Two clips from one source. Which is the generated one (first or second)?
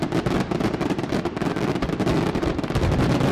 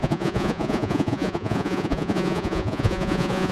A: second